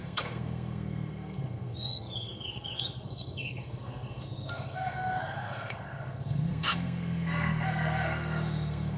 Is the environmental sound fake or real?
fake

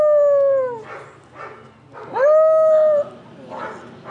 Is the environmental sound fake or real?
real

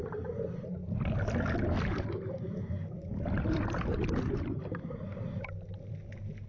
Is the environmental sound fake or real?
real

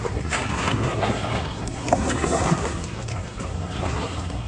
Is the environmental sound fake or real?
fake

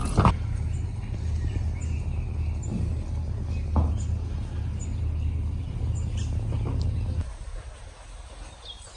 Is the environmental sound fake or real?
real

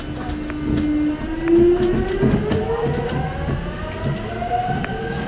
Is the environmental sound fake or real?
real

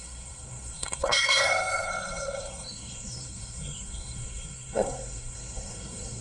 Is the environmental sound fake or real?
fake